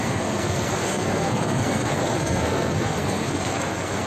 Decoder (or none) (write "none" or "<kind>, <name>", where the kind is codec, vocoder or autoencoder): codec, SNAC